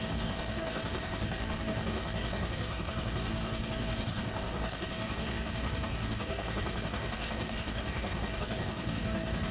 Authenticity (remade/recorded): remade